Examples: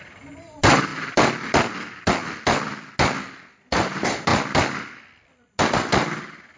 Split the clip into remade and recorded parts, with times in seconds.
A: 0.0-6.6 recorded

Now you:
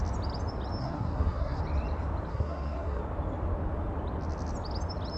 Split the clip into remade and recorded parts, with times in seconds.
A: 0.0-0.8 recorded; 0.8-1.6 remade; 1.6-2.3 recorded; 2.3-3.0 remade; 3.0-5.2 recorded

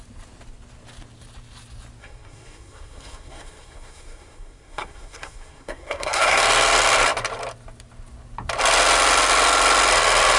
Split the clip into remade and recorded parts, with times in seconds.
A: 0.0-2.0 recorded; 2.0-6.4 remade; 6.4-10.4 recorded

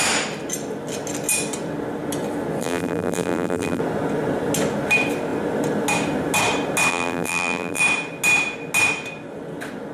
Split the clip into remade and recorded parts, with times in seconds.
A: 0.0-2.6 recorded; 2.6-3.8 remade; 3.8-6.9 recorded; 6.9-7.8 remade; 7.8-9.9 recorded

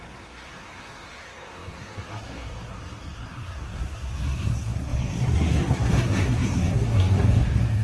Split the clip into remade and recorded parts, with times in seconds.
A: 0.0-7.8 remade

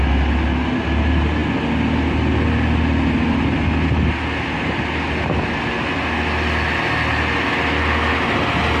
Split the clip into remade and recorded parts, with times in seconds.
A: 0.0-8.8 recorded

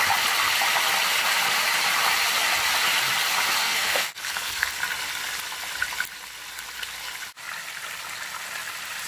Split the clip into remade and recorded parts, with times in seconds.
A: 0.0-3.6 recorded; 3.6-4.7 remade; 4.7-9.1 recorded

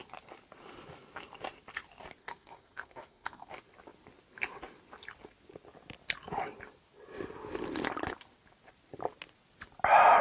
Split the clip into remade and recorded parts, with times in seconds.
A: 0.0-2.2 recorded; 2.2-3.5 remade; 3.5-10.2 recorded